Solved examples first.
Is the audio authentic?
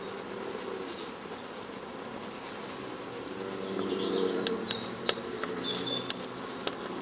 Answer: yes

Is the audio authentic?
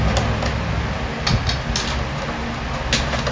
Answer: yes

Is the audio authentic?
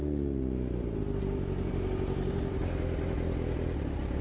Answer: yes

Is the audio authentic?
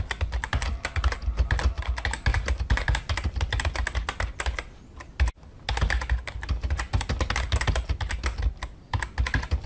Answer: yes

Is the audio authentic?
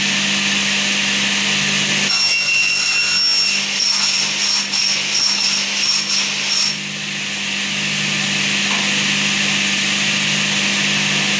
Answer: yes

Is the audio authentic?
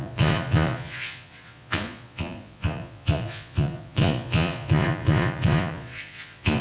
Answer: no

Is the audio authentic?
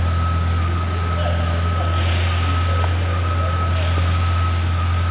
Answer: yes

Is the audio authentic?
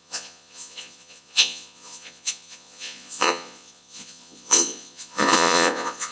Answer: no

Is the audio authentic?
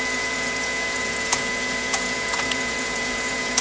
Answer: no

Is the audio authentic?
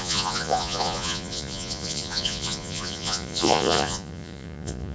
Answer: no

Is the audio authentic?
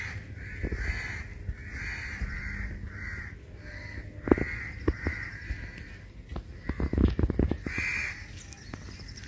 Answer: yes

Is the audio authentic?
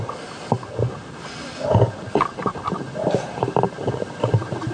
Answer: yes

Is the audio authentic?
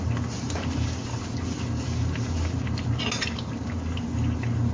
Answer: yes